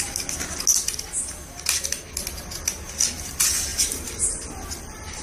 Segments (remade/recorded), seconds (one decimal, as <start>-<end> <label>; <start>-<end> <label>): 0.0-3.7 recorded; 3.7-5.2 remade